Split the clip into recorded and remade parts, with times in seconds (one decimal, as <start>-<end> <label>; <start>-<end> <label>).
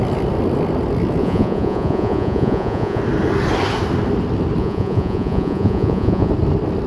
0.0-1.2 recorded; 1.2-3.0 remade; 3.0-4.6 recorded; 4.6-6.3 remade; 6.3-6.9 recorded